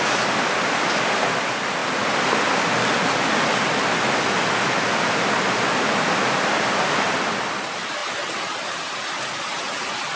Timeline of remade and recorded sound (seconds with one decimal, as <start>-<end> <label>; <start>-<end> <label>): 0.0-10.2 recorded